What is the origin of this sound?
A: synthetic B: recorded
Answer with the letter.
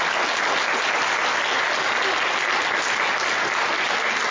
B